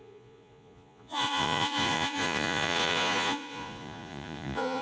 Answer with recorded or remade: remade